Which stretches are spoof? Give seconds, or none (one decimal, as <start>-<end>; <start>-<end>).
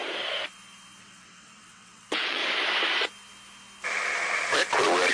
1.0-2.4